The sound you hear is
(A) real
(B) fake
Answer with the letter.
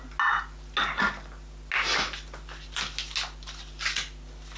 A